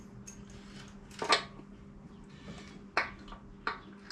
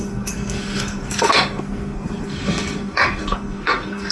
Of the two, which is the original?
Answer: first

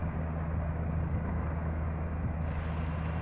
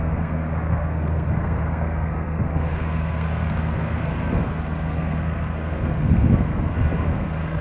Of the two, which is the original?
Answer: first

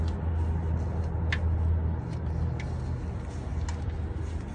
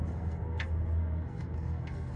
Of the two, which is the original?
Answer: first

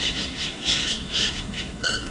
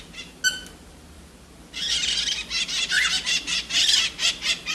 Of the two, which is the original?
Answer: second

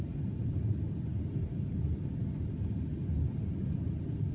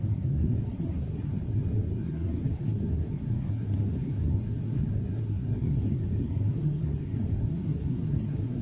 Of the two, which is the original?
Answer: first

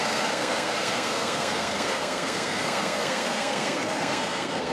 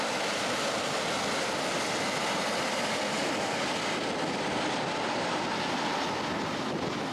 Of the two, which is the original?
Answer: second